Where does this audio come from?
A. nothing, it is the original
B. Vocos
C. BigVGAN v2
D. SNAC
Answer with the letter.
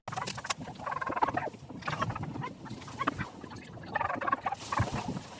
A